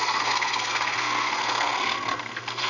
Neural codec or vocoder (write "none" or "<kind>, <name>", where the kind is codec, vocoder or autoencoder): codec, SNAC